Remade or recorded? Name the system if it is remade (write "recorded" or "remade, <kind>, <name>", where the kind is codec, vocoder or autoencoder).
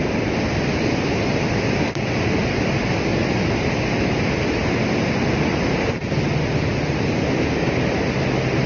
recorded